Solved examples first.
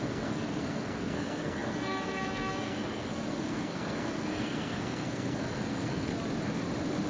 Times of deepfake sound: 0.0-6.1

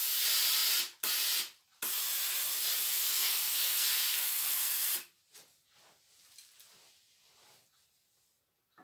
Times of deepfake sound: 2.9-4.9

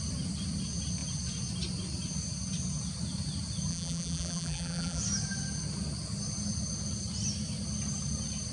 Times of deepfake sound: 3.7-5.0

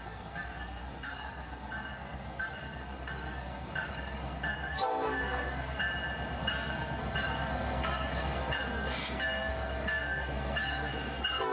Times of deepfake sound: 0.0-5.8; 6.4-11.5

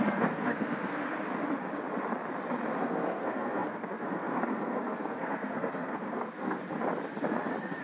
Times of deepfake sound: 0.0-1.0; 2.8-6.6

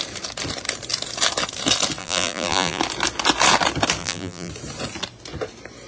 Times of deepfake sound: 2.0-2.8; 4.0-4.5